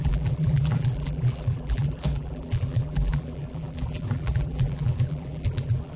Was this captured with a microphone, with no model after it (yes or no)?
no